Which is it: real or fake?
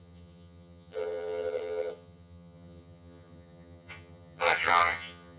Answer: fake